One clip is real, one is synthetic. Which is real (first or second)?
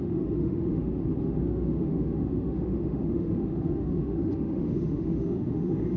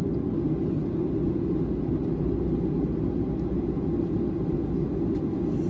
second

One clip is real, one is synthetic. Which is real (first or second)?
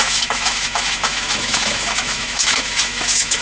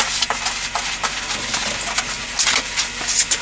second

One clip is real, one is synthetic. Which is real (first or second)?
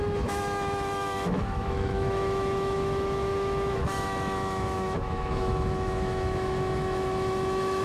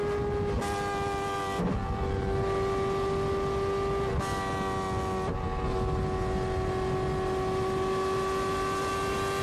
second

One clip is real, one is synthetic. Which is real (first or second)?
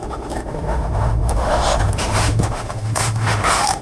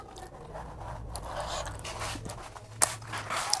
second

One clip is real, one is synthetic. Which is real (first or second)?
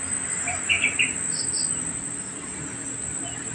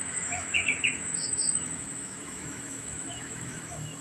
first